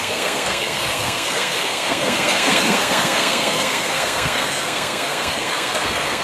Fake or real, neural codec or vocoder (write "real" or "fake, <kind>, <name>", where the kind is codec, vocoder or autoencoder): fake, codec, SNAC